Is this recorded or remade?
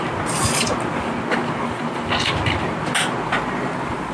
recorded